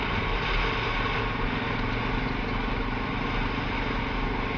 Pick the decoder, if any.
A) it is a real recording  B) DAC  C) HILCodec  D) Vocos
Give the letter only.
A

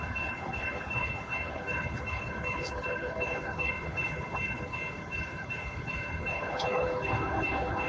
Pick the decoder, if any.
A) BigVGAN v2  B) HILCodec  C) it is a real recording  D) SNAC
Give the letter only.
B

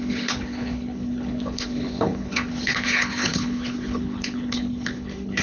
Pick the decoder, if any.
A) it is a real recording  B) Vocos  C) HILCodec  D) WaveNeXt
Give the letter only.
C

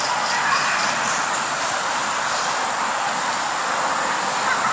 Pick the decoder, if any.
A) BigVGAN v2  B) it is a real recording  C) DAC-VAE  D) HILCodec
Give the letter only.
B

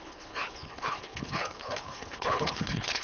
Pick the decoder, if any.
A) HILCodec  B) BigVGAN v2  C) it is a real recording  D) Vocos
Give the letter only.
A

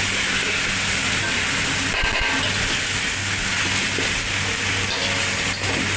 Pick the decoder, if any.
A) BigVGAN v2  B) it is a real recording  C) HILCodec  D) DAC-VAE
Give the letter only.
B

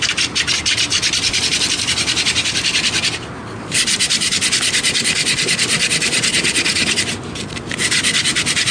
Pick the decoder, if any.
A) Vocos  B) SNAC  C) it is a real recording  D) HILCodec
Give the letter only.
C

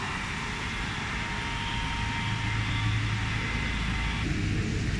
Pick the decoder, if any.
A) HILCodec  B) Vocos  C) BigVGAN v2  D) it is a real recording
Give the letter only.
D